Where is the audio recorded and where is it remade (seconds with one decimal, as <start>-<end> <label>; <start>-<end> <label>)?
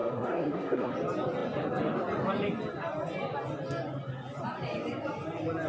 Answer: 0.0-0.9 remade; 0.9-5.7 recorded